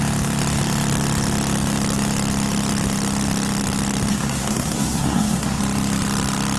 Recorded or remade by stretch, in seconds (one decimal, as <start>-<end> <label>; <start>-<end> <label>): 0.0-4.1 recorded; 4.1-5.6 remade; 5.6-6.6 recorded